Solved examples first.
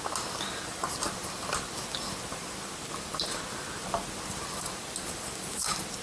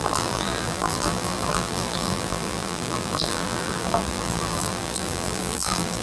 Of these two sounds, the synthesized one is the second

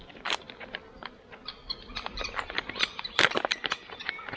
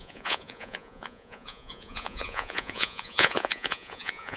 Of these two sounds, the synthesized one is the second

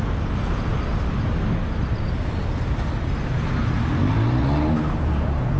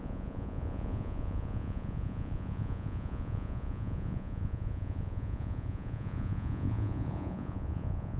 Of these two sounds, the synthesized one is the second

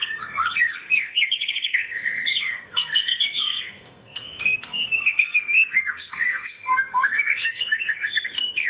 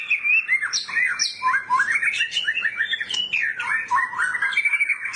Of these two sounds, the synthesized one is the first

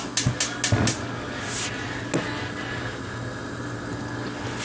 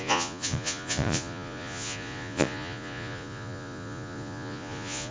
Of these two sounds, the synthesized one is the second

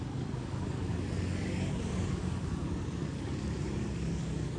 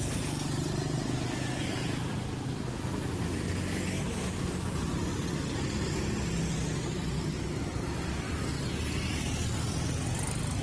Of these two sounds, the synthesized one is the first